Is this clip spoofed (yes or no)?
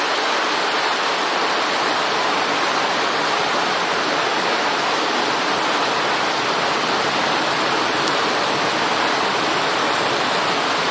no